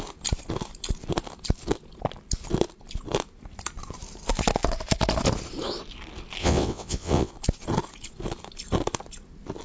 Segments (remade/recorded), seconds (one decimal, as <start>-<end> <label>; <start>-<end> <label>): 0.0-6.4 recorded; 6.4-7.3 remade; 7.3-9.6 recorded